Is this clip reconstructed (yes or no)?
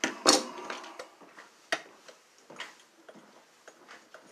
no